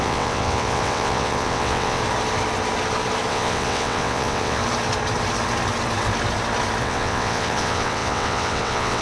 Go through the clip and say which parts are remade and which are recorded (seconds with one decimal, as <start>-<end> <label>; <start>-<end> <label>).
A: 0.0-2.0 remade; 2.0-3.3 recorded; 3.3-4.6 remade; 4.6-6.8 recorded; 6.8-9.0 remade